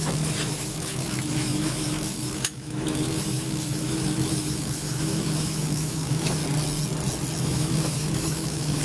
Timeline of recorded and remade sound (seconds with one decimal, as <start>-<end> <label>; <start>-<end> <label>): 0.0-6.4 remade; 6.4-7.4 recorded; 7.4-8.8 remade